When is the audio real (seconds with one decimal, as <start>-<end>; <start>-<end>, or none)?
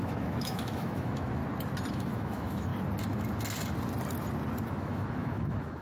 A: 1.4-1.9; 2.7-4.7